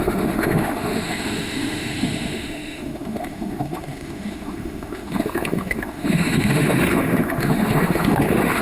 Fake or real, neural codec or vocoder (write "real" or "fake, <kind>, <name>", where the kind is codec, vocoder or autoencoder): fake, autoencoder, DAC-VAE